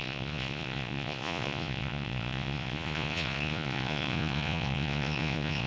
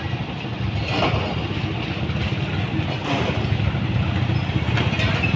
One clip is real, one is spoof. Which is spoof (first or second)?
first